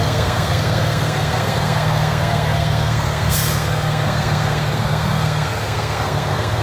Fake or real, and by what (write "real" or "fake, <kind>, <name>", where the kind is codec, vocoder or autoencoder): fake, codec, SNAC